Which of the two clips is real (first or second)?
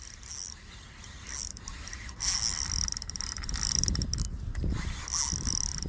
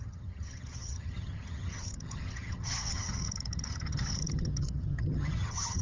first